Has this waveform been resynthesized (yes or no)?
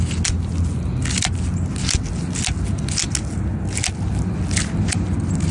no